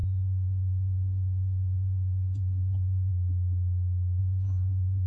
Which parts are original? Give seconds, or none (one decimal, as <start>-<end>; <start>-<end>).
3.1-4.2